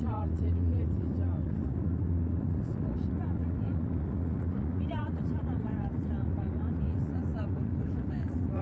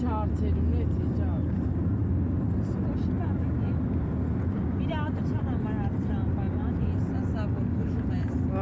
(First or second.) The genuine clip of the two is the second